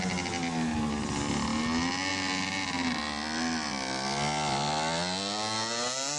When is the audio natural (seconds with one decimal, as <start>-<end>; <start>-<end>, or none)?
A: 0.0-6.2